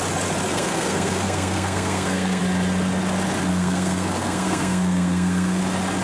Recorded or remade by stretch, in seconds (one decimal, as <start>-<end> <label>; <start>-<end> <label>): 0.0-0.5 recorded; 0.5-2.4 remade; 2.4-3.5 recorded; 3.5-5.6 remade; 5.6-6.0 recorded